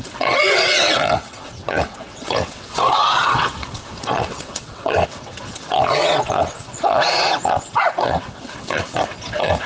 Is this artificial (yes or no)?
yes